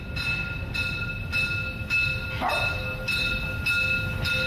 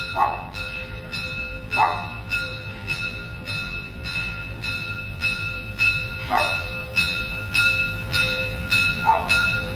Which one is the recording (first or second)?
first